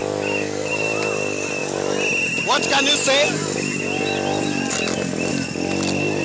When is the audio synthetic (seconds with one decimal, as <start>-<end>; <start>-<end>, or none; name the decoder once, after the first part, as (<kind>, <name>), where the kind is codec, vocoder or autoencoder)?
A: none